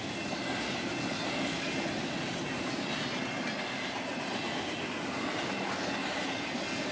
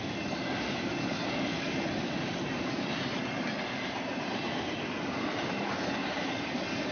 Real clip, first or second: first